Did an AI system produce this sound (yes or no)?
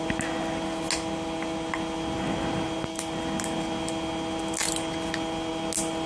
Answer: no